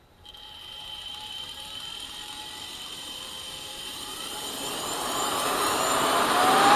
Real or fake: fake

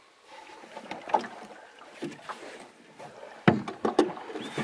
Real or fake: real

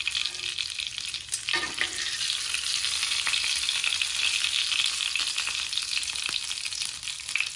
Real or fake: real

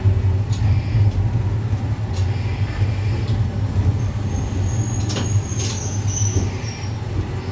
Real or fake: real